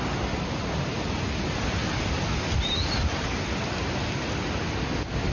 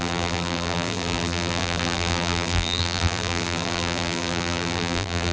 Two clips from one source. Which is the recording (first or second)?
first